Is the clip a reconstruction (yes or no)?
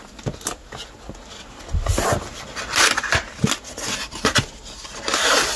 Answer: no